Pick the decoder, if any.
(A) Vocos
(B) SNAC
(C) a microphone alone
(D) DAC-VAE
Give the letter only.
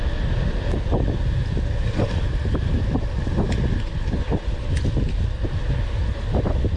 C